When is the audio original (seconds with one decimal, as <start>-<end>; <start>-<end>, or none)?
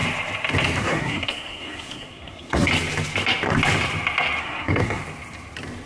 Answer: 0.0-0.8; 2.7-4.4; 5.0-5.9